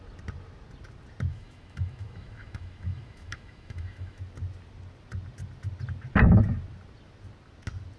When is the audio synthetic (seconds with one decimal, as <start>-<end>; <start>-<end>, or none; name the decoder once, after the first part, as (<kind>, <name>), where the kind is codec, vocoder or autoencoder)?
1.3-4.2 (autoencoder, DAC-VAE)